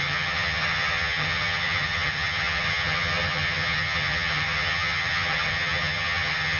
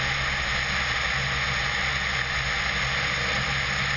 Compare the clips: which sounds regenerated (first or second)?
first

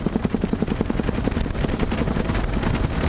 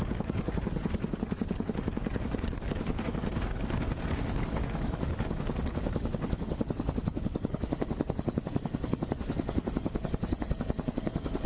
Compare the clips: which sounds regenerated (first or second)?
second